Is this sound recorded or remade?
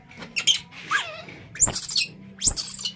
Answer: recorded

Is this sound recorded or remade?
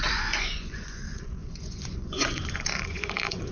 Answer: remade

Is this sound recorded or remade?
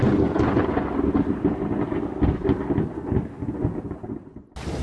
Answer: recorded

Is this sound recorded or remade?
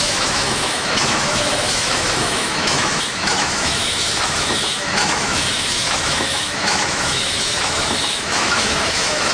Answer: remade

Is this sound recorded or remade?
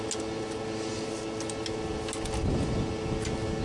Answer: recorded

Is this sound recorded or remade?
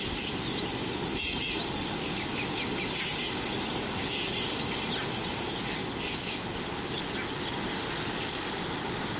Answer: recorded